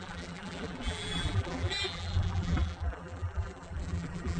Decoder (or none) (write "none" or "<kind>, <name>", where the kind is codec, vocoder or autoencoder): vocoder, BigVGAN v2